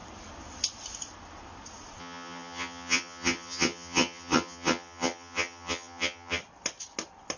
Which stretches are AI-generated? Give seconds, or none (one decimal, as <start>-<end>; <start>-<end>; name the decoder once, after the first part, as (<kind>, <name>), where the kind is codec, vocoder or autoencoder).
2.0-6.4 (vocoder, HiFi-GAN)